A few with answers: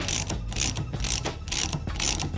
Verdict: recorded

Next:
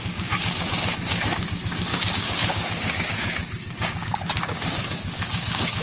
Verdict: remade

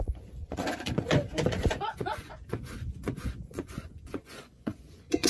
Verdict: remade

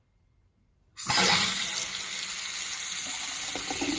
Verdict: recorded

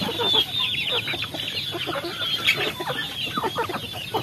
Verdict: recorded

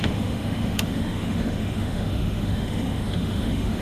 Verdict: remade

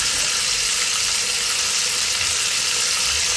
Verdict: recorded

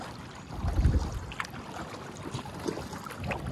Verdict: recorded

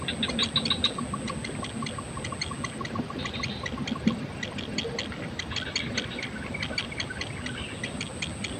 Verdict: recorded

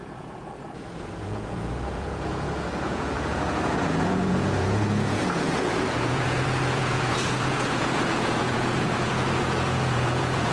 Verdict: remade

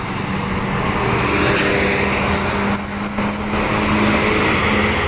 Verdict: recorded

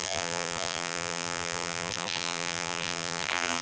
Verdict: remade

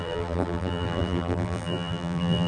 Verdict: remade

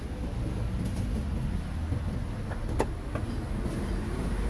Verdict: recorded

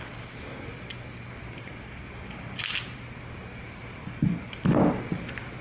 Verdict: recorded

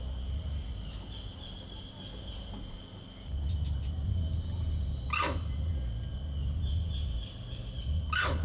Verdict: recorded